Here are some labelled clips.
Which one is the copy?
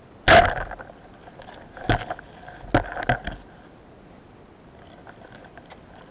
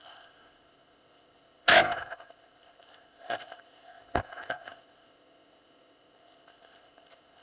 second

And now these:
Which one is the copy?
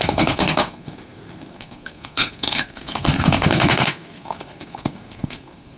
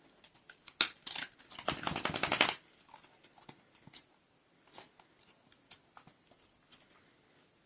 first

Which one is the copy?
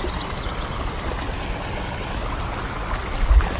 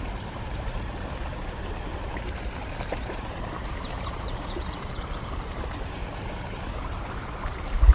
second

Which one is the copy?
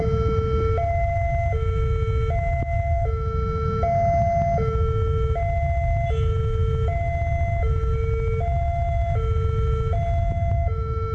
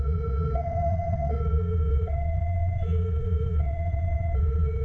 second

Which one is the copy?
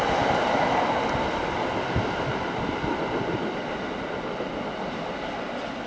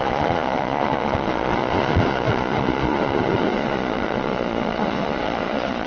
second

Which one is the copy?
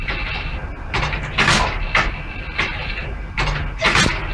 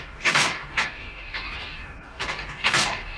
second